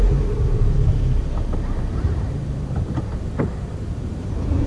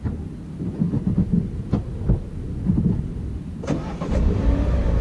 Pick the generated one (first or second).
first